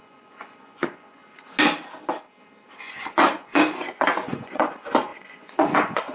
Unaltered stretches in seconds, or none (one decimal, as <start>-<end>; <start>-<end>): 1.2-2.8